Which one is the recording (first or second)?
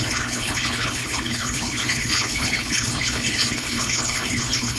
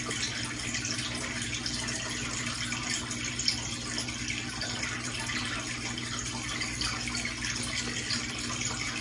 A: second